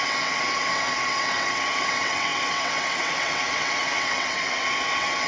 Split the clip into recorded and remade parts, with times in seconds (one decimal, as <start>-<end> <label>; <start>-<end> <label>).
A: 0.0-5.3 remade